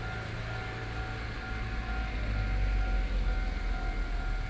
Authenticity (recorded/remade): recorded